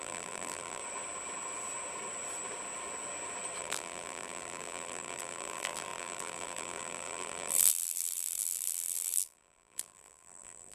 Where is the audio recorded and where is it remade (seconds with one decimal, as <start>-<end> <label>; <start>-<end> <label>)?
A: 0.0-0.8 remade; 0.8-3.6 recorded; 3.6-10.7 remade